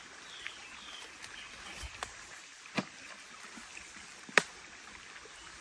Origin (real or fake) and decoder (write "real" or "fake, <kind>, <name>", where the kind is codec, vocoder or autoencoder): real